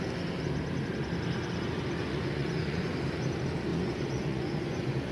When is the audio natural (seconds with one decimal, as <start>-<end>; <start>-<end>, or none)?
0.0-2.0; 2.9-3.7